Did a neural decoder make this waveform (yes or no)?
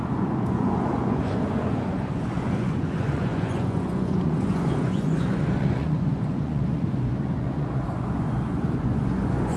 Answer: yes